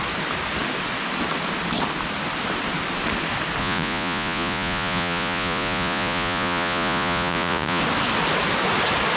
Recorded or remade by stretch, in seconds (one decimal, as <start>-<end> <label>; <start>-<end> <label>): 0.0-3.6 recorded; 3.6-7.8 remade; 7.8-9.2 recorded